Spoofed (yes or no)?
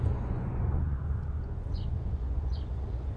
yes